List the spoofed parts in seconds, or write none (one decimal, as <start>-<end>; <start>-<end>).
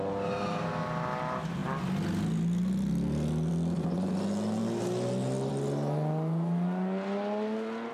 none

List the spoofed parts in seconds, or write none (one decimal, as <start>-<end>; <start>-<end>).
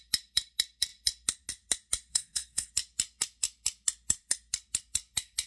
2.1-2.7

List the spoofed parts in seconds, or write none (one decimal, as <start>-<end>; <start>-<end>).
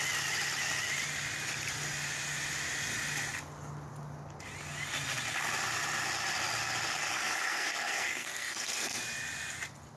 7.1-9.0